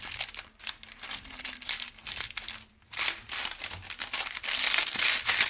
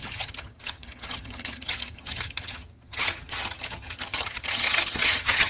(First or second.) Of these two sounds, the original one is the first